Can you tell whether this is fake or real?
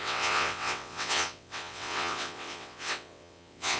fake